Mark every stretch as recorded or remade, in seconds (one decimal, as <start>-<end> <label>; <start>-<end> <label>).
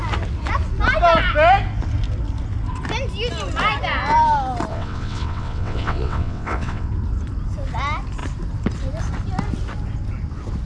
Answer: 0.0-4.7 recorded; 4.7-6.9 remade; 6.9-10.7 recorded